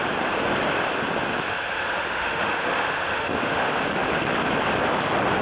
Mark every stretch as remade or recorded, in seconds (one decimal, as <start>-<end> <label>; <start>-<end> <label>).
0.0-1.5 recorded; 1.5-3.8 remade; 3.8-5.4 recorded